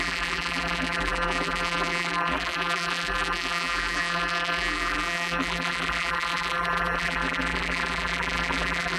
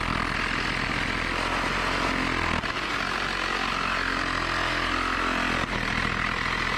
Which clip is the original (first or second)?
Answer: second